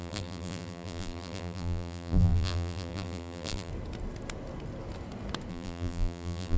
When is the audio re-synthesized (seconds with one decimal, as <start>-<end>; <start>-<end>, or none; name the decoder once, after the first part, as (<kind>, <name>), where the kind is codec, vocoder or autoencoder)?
0.0-3.7 (vocoder, BigVGAN v2); 5.5-6.6